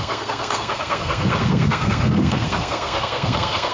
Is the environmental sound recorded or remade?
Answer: remade